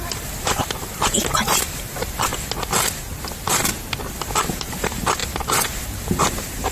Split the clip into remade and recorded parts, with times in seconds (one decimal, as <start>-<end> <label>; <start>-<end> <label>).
0.0-2.3 remade; 2.3-4.5 recorded; 4.5-6.7 remade